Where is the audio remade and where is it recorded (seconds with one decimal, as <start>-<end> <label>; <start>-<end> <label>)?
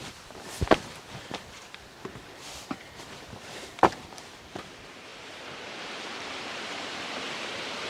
0.0-7.9 remade